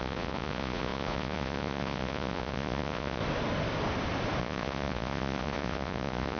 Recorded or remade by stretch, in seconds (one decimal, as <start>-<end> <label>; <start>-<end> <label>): 0.0-3.2 remade; 3.2-4.4 recorded; 4.4-6.4 remade